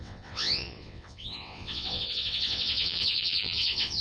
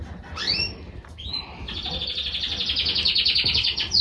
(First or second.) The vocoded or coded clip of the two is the first